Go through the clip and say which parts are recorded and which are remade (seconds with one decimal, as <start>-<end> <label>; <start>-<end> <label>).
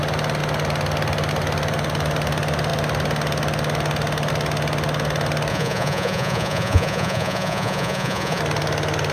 0.0-5.5 recorded; 5.5-8.4 remade; 8.4-9.1 recorded